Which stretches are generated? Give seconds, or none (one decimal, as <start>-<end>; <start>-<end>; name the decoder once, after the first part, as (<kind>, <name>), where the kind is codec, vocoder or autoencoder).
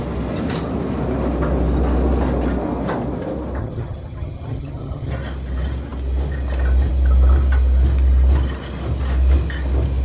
3.6-5.1 (vocoder, HiFi-GAN)